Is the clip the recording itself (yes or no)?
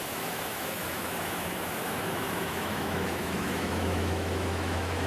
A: no